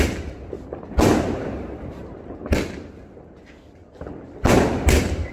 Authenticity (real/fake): real